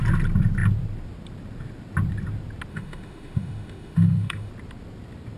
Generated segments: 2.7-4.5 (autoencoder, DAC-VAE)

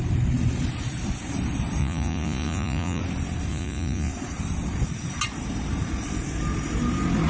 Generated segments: 1.8-3.0 (vocoder, Vocos); 3.5-4.1

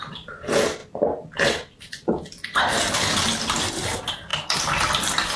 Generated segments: none

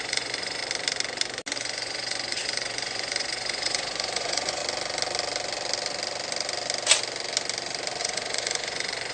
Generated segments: 0.0-0.6 (vocoder, Vocos); 1.6-4.6; 8.0-9.1

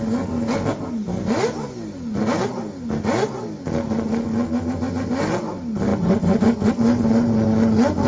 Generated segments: none

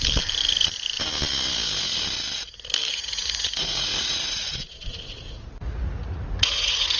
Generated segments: 2.9-7.0 (vocoder, Vocos)